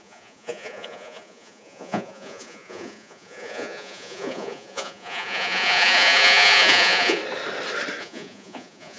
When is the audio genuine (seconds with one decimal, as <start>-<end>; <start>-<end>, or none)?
7.2-8.0